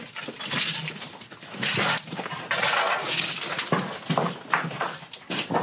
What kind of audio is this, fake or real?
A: real